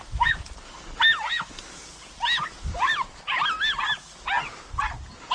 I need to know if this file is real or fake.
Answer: real